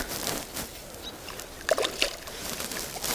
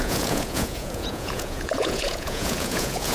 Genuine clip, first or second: first